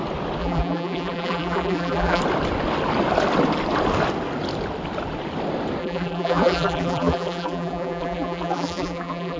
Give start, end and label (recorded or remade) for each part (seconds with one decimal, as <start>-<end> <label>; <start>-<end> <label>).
0.0-0.4 recorded; 0.4-2.2 remade; 2.2-5.8 recorded; 5.8-9.4 remade